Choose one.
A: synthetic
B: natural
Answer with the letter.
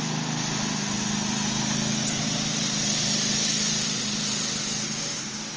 B